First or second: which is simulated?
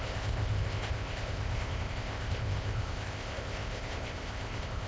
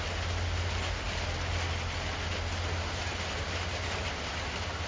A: first